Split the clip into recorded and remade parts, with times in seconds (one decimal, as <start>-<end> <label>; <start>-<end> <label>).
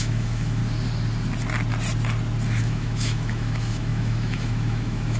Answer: 0.0-0.6 remade; 0.6-2.6 recorded; 2.6-5.2 remade